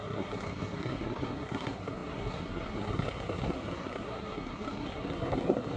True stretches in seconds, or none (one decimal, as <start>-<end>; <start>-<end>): none